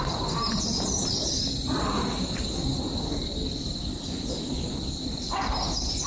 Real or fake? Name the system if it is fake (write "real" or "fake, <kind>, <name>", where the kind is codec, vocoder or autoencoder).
real